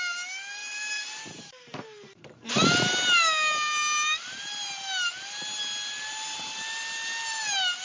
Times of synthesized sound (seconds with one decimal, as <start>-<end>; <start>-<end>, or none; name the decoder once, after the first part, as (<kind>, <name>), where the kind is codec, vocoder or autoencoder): 0.6-2.5 (vocoder, BigVGAN v2)